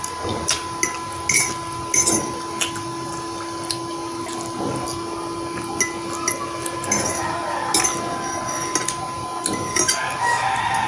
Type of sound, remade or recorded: recorded